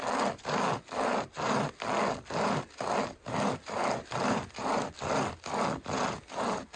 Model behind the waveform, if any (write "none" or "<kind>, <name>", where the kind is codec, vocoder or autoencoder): none